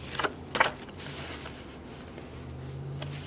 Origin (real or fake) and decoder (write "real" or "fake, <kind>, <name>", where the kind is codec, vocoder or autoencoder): real